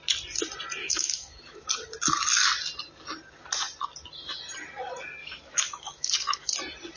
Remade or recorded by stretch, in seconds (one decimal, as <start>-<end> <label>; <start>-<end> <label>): 0.0-0.8 recorded; 0.8-1.7 remade; 1.7-5.2 recorded; 5.2-6.5 remade; 6.5-7.0 recorded